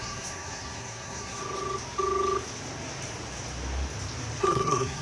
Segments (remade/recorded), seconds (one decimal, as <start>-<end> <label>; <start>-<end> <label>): 0.0-1.4 remade; 1.4-4.4 recorded; 4.4-5.0 remade